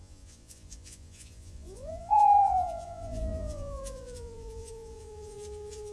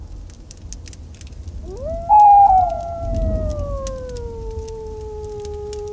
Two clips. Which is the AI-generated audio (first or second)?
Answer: first